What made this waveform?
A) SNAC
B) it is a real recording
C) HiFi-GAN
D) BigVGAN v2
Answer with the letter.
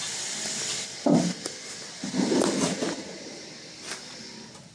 B